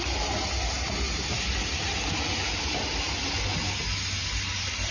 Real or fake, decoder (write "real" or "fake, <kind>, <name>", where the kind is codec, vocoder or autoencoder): real